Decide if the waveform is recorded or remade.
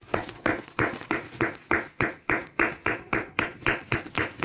remade